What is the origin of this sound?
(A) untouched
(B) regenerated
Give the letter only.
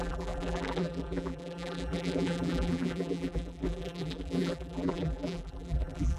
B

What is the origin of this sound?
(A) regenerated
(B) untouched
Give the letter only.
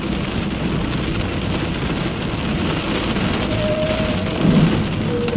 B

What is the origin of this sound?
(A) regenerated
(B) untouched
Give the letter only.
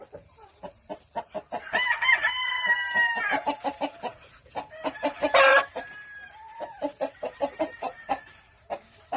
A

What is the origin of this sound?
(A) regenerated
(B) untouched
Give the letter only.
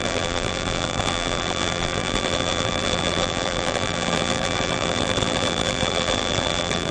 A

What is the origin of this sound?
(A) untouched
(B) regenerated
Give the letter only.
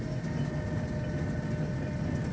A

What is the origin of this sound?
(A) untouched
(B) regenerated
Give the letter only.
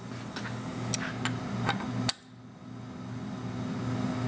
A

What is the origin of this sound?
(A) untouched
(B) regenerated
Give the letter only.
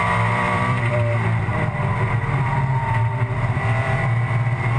B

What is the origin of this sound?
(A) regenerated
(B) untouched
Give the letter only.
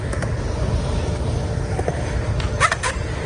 B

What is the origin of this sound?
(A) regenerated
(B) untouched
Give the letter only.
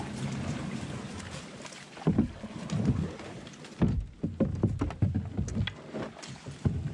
B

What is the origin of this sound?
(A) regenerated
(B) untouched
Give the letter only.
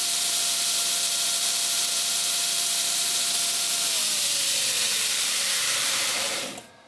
A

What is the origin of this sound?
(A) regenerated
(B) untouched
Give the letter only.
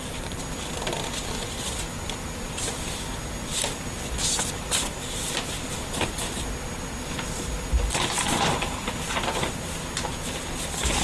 B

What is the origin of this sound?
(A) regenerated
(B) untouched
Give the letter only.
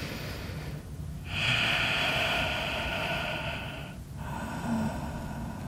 B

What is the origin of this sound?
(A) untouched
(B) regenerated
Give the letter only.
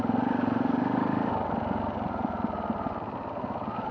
B